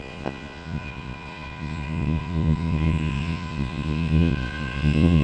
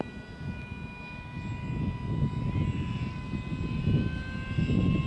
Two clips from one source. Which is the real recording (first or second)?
second